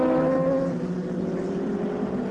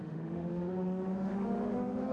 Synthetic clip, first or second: second